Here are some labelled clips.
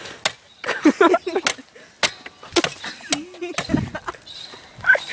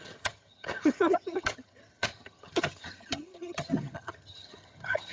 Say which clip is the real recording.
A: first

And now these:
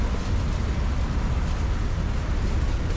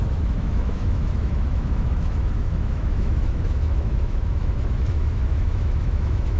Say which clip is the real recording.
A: first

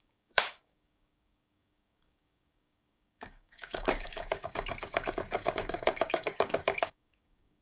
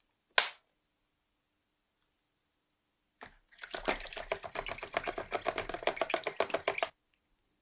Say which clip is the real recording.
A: second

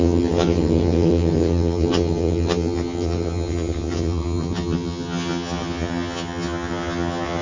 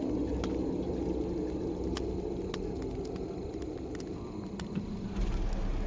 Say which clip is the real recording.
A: second